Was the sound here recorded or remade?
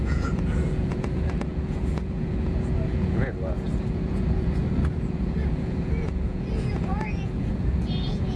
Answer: remade